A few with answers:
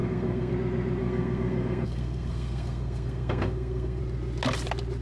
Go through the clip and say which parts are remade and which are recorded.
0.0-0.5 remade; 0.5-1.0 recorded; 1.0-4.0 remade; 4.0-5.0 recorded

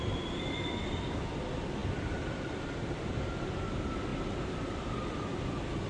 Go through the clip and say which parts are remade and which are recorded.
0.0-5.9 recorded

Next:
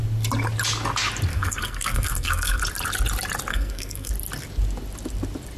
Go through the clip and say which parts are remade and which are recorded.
0.0-1.3 recorded; 1.3-2.6 remade; 2.6-3.5 recorded; 3.5-4.1 remade; 4.1-5.6 recorded

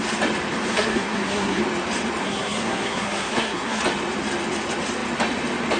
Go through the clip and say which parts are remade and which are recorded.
0.0-0.7 recorded; 0.7-1.6 remade; 1.6-2.2 recorded; 2.2-3.8 remade; 3.8-5.8 recorded